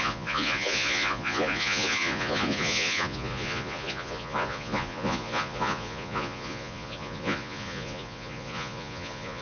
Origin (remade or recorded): remade